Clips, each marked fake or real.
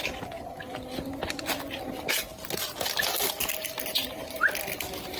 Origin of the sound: real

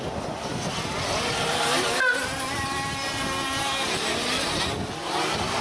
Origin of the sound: real